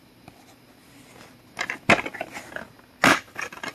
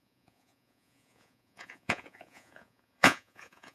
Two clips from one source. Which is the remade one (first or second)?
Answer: second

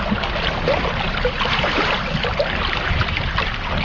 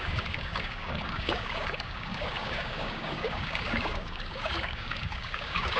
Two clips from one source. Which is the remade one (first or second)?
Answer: second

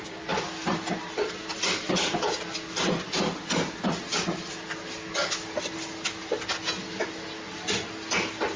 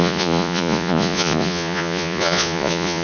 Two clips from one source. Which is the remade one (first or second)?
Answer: second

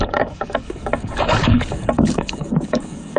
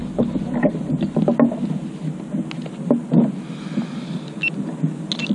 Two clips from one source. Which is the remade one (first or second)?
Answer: first